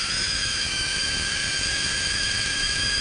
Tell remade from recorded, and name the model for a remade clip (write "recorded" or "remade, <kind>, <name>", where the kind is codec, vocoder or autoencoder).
remade, autoencoder, DAC-VAE